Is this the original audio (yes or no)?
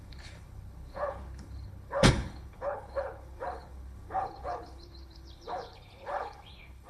no